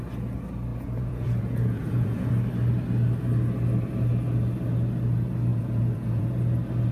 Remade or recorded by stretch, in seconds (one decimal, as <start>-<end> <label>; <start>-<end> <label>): 0.0-0.7 recorded; 0.7-2.3 remade; 2.3-5.5 recorded; 5.5-6.3 remade; 6.3-6.9 recorded